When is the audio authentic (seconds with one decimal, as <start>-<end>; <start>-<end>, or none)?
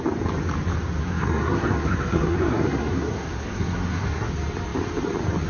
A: 0.0-1.0; 4.3-5.5